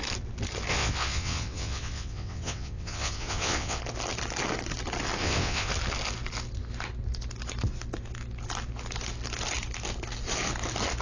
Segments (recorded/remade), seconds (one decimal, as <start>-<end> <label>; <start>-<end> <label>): 0.0-0.7 recorded; 0.7-3.8 remade; 3.8-5.2 recorded; 5.2-5.7 remade; 5.7-11.0 recorded